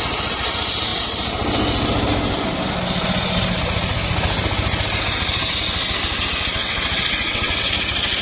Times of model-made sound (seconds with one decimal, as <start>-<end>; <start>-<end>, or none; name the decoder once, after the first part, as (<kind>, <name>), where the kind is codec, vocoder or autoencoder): 6.5-7.7 (vocoder, WaveNeXt)